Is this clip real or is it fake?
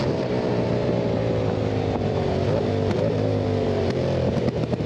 fake